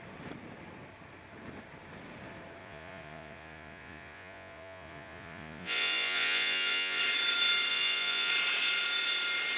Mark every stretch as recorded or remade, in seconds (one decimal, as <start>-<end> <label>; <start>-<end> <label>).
0.0-2.6 recorded; 2.6-7.0 remade; 7.0-7.7 recorded; 7.7-8.3 remade; 8.3-9.6 recorded